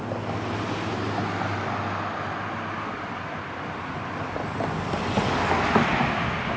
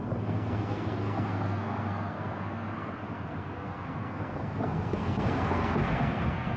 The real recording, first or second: first